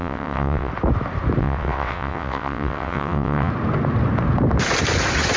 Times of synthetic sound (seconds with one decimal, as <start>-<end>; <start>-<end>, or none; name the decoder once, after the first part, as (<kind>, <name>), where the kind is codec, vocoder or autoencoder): 0.0-0.7 (vocoder, WaveNeXt); 1.4-3.5